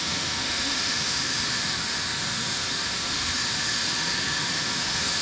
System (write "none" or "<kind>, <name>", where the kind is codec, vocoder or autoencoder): autoencoder, DAC-VAE